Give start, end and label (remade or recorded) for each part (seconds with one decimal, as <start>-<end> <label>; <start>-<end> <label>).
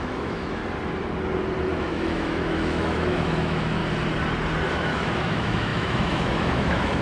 0.0-0.6 remade; 0.6-1.8 recorded; 1.8-3.8 remade; 3.8-4.7 recorded; 4.7-7.0 remade